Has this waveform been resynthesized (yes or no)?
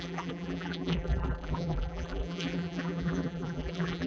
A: yes